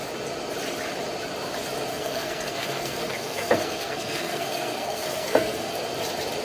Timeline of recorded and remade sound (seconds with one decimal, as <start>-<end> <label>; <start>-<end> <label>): 0.0-1.9 recorded; 1.9-5.7 remade; 5.7-6.4 recorded